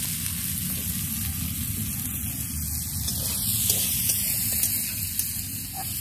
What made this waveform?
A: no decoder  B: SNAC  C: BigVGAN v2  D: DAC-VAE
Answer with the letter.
A